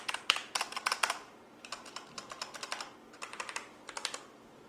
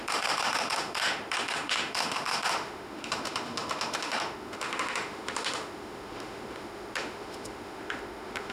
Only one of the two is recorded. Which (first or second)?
first